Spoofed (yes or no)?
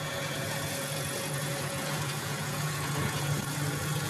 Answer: yes